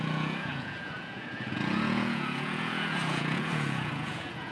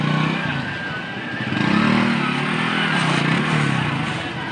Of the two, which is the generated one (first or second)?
first